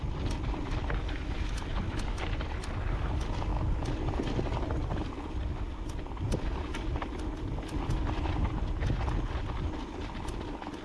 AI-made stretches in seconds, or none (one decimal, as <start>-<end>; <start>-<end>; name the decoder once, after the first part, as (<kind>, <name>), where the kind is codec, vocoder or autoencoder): none